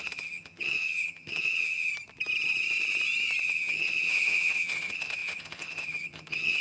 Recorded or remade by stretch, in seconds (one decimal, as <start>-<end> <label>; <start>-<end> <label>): 0.0-1.9 remade; 1.9-3.4 recorded; 3.4-6.6 remade